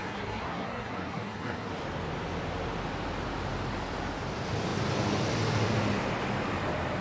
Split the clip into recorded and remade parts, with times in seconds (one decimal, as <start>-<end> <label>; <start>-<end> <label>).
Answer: 0.0-1.7 remade; 1.7-7.0 recorded